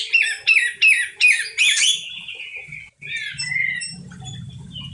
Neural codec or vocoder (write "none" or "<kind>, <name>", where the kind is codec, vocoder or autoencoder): vocoder, BigVGAN v2